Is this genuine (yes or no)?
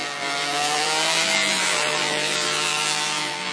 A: no